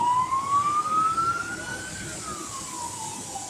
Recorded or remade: recorded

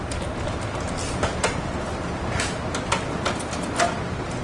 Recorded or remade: recorded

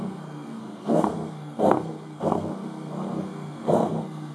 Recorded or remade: remade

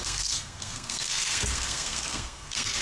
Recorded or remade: remade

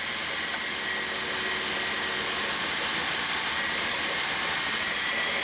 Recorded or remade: recorded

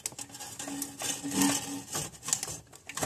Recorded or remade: recorded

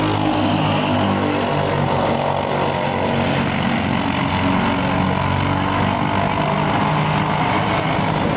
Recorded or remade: recorded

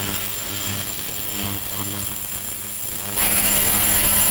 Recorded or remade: remade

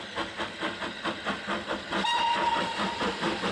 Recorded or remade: recorded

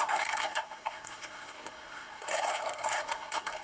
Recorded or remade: remade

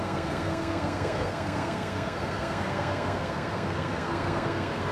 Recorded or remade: remade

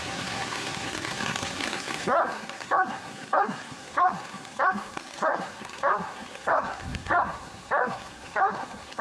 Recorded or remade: remade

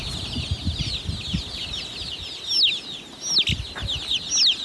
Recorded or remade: recorded